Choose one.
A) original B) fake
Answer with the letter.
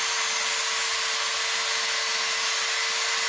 A